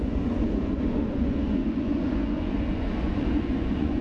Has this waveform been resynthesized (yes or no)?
yes